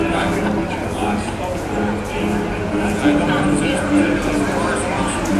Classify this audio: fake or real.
real